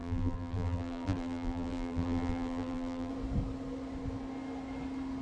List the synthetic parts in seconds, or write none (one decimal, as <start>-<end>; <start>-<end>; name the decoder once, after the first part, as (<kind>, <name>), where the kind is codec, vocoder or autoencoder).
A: 0.0-3.1 (vocoder, BigVGAN v2)